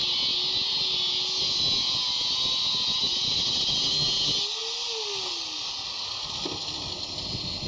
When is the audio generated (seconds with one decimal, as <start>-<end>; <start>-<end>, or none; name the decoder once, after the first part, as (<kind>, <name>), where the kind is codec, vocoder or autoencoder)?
none